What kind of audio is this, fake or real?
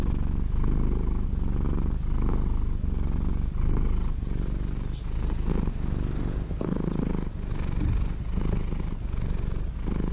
real